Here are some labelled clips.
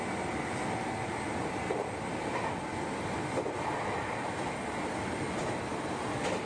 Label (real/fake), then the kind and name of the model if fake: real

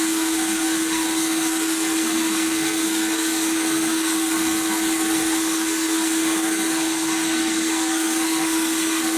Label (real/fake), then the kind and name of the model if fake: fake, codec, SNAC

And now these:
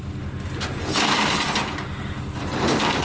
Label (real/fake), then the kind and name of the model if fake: real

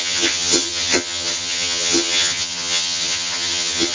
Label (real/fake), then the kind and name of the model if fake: fake, vocoder, HiFi-GAN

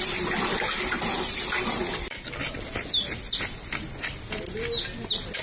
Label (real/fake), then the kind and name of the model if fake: real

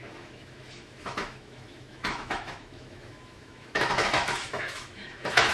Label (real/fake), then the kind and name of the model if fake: fake, autoencoder, DAC-VAE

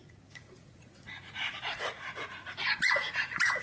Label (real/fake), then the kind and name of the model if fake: fake, vocoder, Vocos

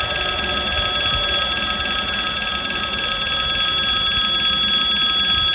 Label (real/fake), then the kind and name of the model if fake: real